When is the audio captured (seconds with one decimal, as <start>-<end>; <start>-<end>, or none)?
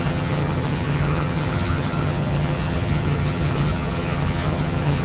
none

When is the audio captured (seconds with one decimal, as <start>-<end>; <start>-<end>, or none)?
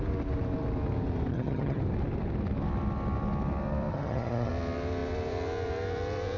0.0-1.3; 1.8-3.9; 4.5-6.4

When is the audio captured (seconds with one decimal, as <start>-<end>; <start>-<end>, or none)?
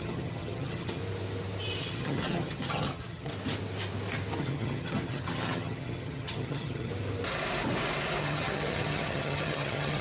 1.0-1.8; 3.3-4.4; 6.9-8.2